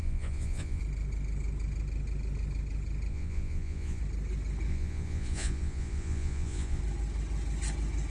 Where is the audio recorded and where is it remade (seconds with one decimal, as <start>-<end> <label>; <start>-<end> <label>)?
0.0-0.8 remade; 0.8-3.1 recorded; 3.1-4.0 remade; 4.0-4.7 recorded; 4.7-6.8 remade; 6.8-8.1 recorded